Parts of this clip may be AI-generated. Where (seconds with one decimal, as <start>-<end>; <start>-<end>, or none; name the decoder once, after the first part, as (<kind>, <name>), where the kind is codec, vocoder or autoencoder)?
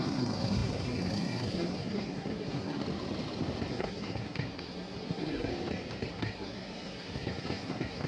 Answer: 0.0-2.8 (codec, SNAC); 3.7-5.5; 6.1-8.1